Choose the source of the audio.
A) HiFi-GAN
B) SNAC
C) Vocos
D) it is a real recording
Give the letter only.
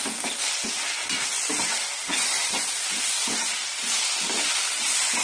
D